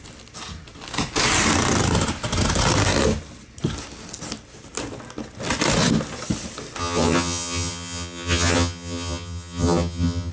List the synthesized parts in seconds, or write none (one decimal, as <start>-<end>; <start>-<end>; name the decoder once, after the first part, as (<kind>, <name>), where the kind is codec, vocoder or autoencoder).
6.8-10.3 (vocoder, HiFi-GAN)